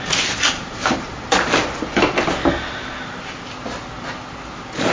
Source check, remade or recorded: recorded